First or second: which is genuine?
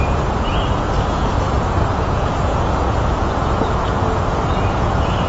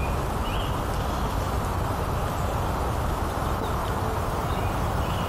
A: second